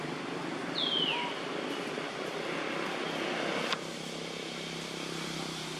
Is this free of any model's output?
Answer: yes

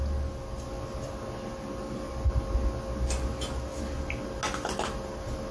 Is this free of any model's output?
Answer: yes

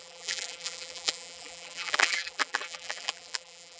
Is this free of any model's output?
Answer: no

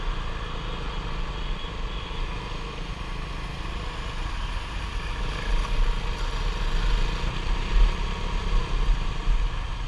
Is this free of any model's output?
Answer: yes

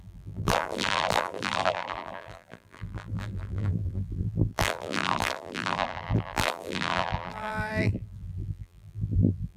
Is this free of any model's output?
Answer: no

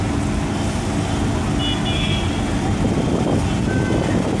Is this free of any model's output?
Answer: yes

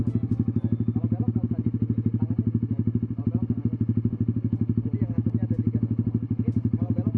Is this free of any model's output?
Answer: yes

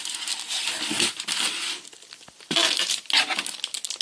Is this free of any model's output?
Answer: yes